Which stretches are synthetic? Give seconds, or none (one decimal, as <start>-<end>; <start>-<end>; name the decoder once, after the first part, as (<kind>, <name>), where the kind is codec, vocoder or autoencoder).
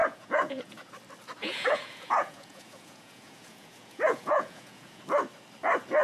0.0-0.9 (vocoder, Vocos); 1.4-5.0